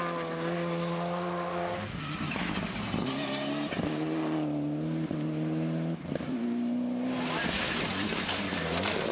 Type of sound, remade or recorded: recorded